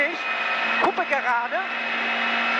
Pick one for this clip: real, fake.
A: real